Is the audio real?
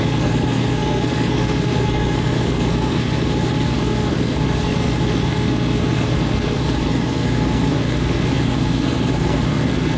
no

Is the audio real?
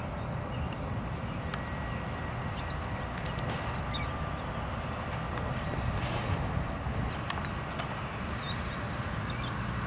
yes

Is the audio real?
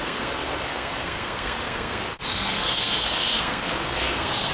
no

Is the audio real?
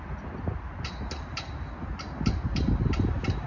yes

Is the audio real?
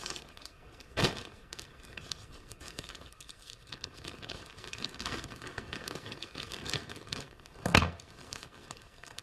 no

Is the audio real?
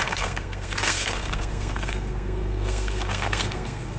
no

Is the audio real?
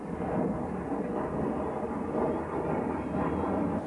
yes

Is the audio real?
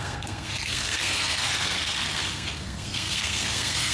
no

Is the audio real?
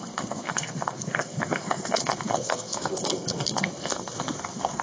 no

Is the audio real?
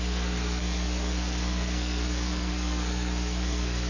no